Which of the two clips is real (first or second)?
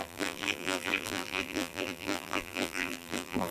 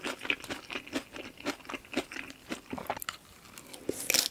second